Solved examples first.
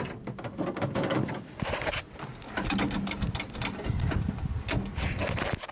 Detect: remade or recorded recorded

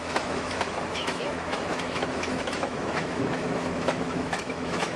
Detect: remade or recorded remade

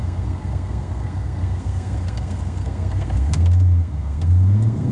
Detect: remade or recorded remade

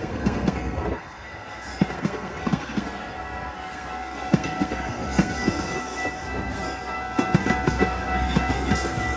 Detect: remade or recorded remade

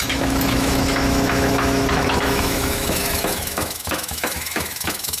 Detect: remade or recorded remade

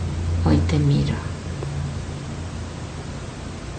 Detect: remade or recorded recorded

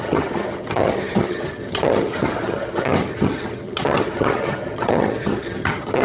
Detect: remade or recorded remade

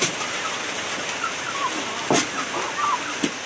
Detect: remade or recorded recorded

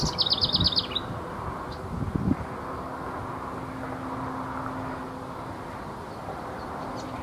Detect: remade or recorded recorded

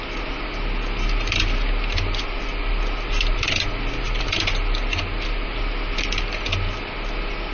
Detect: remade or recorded recorded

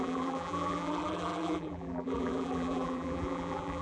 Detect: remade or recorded remade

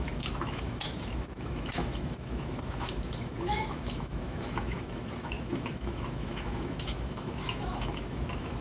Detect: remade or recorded remade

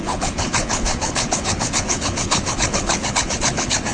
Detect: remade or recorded remade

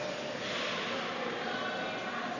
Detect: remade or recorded recorded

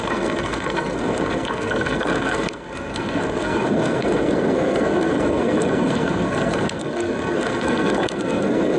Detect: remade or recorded remade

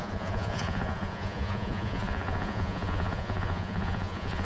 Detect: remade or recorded remade